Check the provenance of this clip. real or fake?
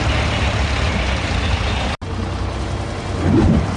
real